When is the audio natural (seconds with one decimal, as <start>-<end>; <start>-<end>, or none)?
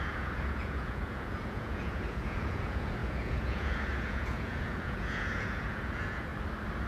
6.3-6.9